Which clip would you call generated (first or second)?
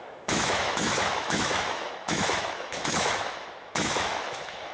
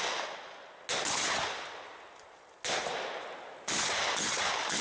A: first